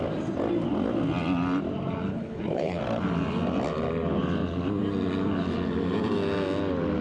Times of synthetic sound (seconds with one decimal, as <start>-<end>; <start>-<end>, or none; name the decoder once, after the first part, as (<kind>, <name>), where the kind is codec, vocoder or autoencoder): 2.1-2.8 (codec, HILCodec)